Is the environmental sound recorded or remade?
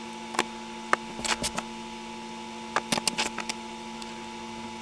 recorded